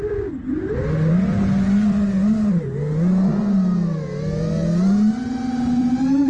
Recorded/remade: recorded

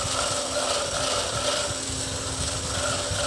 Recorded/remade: recorded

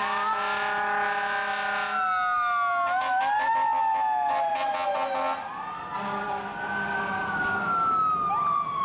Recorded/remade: recorded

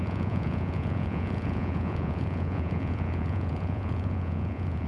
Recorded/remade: remade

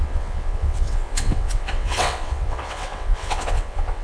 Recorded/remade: remade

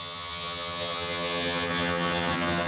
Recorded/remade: remade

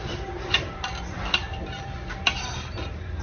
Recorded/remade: remade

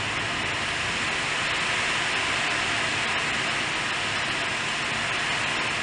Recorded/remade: recorded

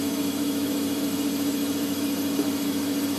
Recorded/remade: remade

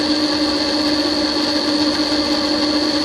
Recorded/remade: recorded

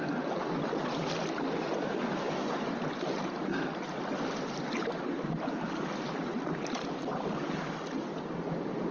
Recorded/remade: recorded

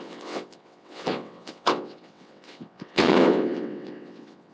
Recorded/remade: remade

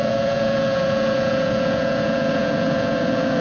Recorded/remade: remade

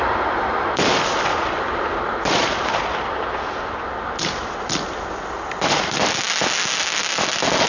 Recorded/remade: recorded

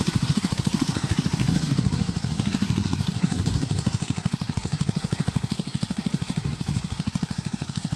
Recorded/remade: remade